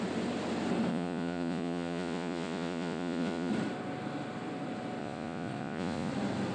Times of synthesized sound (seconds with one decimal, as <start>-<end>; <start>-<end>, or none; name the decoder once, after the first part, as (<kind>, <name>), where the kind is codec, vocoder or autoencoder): 0.9-3.5 (vocoder, Vocos); 5.0-6.1